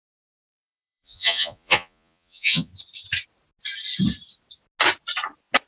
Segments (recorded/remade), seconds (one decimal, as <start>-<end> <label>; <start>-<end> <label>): 0.0-2.7 remade; 2.7-5.7 recorded